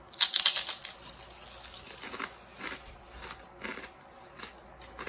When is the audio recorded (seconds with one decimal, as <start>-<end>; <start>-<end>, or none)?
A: 0.0-5.1